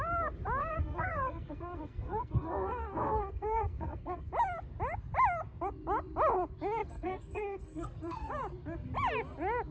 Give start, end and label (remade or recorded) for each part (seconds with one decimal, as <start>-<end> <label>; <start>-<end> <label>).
0.0-0.6 recorded; 0.6-4.3 remade; 4.3-6.8 recorded; 6.8-8.3 remade; 8.3-9.7 recorded